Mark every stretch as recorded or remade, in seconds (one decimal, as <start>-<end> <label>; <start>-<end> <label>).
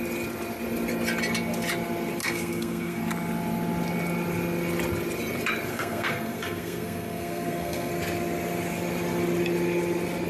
0.0-2.2 recorded; 2.2-3.0 remade; 3.0-5.7 recorded; 5.7-7.9 remade; 7.9-10.3 recorded